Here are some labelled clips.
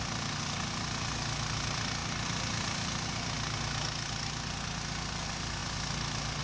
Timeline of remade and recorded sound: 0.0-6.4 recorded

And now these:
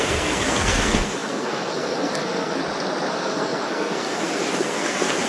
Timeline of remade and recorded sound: 0.0-2.6 remade; 2.6-3.1 recorded; 3.1-5.3 remade

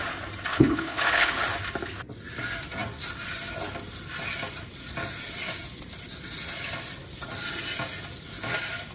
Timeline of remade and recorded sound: 0.0-0.5 recorded; 0.5-1.3 remade; 1.3-8.9 recorded